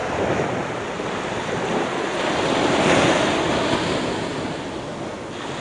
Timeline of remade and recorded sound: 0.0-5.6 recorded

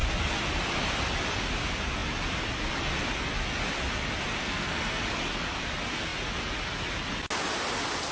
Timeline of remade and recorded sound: 0.0-4.4 recorded; 4.4-5.0 remade; 5.0-8.1 recorded